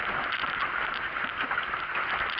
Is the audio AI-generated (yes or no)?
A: no